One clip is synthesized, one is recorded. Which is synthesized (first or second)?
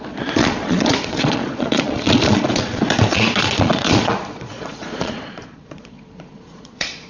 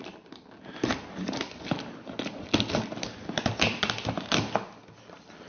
first